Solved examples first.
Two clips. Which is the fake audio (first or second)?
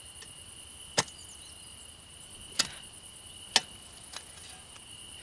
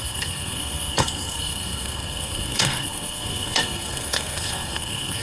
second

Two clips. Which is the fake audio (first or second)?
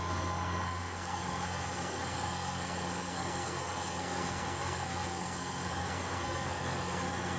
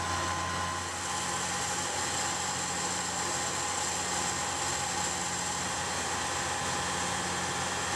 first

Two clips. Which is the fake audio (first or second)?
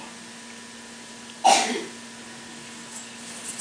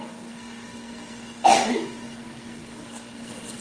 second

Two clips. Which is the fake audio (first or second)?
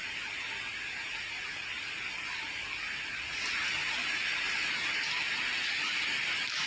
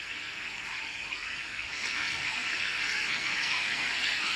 second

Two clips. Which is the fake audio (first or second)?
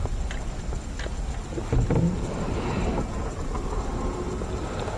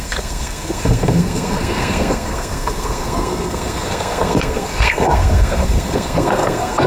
second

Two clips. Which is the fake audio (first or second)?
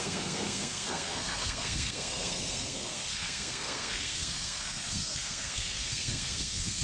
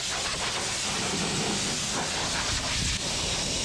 first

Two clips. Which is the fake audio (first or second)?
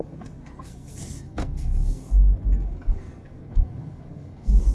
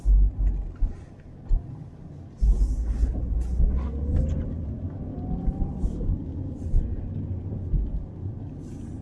first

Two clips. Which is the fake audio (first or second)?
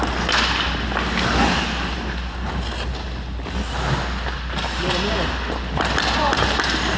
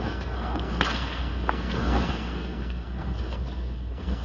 second